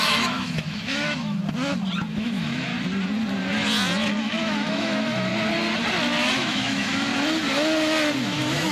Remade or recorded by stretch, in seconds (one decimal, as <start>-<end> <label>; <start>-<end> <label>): 0.0-1.4 remade; 1.4-2.1 recorded; 2.1-2.7 remade; 2.7-4.2 recorded; 4.2-5.3 remade; 5.3-6.3 recorded; 6.3-7.1 remade; 7.1-8.2 recorded; 8.2-8.7 remade

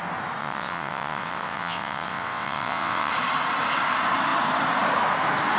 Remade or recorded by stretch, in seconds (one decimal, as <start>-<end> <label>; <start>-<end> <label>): 0.0-0.4 recorded; 0.4-3.1 remade; 3.1-5.6 recorded

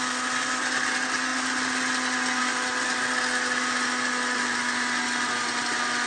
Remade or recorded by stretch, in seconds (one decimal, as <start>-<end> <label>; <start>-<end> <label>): 0.0-6.1 recorded

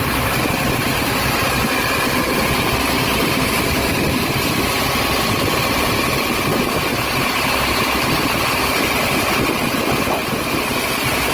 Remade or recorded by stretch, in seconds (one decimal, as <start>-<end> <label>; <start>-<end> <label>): 0.0-10.2 recorded; 10.2-10.8 remade; 10.8-11.3 recorded

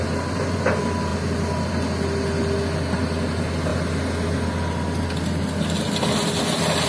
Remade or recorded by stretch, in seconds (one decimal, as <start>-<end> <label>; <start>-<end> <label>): 0.0-6.9 recorded